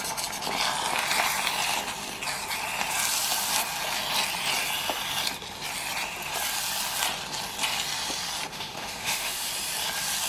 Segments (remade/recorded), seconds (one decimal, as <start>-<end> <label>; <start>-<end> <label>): 0.0-8.5 recorded; 8.5-9.5 remade; 9.5-10.3 recorded